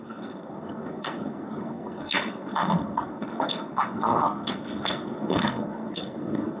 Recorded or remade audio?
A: remade